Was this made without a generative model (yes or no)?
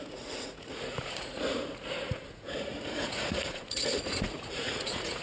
no